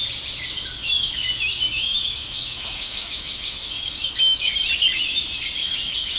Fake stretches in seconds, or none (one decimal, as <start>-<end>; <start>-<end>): 0.8-4.5; 5.6-6.2